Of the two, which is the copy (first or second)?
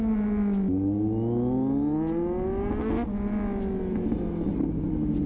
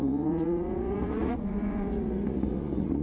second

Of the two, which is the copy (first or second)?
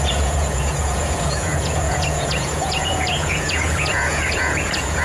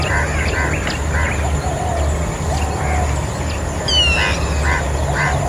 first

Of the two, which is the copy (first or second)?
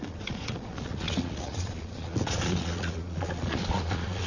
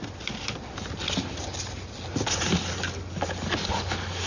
first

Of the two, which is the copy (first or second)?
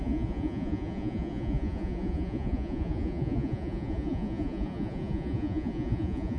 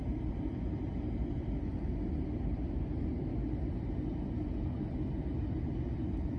first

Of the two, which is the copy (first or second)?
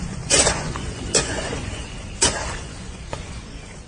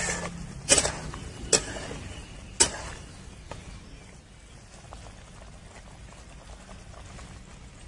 first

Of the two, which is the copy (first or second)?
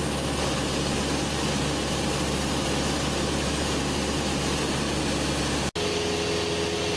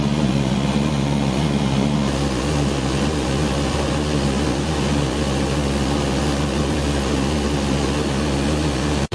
second